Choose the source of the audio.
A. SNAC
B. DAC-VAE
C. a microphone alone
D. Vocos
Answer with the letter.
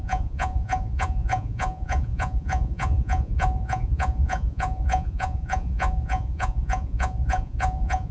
D